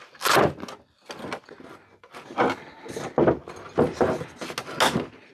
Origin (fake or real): real